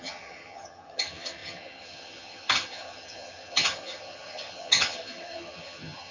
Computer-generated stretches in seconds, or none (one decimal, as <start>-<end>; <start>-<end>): 0.0-6.1